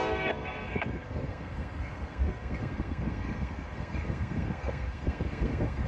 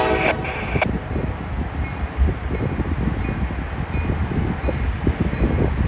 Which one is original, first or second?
second